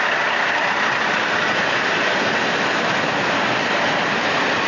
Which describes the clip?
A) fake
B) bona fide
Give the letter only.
B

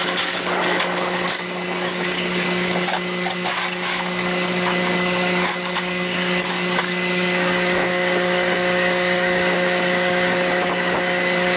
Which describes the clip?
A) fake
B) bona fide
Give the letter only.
A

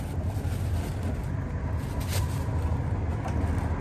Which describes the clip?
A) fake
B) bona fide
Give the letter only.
B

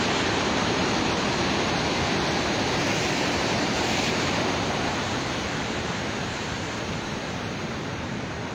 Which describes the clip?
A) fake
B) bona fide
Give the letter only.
A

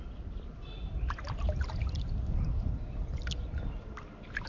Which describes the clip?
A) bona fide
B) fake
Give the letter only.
A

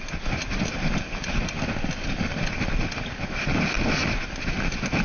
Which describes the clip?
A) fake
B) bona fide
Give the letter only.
B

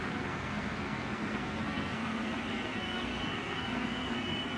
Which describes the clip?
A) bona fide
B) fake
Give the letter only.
B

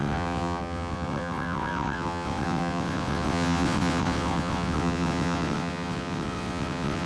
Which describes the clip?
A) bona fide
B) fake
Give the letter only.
B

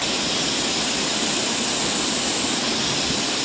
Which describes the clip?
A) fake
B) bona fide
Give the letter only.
B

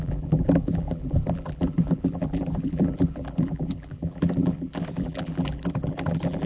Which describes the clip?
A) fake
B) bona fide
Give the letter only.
A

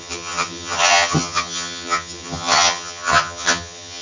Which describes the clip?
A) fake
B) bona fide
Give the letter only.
A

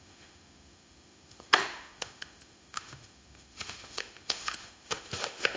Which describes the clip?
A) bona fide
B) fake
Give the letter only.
B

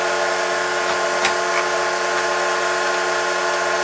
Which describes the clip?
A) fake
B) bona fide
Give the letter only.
B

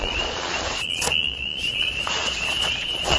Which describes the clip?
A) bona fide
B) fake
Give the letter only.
B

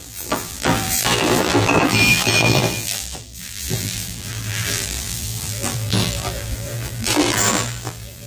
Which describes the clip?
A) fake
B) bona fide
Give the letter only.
A